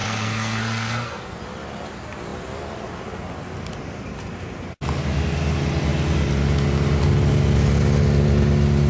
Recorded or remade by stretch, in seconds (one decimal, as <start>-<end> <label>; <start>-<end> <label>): 0.0-1.4 remade; 1.4-8.9 recorded

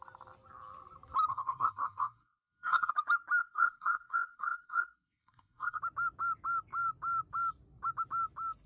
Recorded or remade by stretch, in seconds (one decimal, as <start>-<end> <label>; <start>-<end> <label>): 0.0-1.3 recorded; 1.3-2.9 remade; 2.9-3.4 recorded; 3.4-5.8 remade; 5.8-8.7 recorded

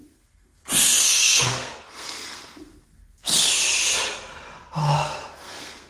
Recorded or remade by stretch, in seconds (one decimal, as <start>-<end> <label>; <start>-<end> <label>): 0.0-3.5 remade; 3.5-4.8 recorded; 4.8-5.9 remade

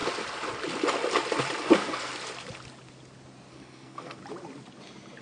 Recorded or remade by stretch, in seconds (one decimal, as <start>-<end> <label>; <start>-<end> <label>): 0.0-1.6 recorded; 1.6-2.1 remade; 2.1-3.5 recorded; 3.5-4.2 remade; 4.2-5.2 recorded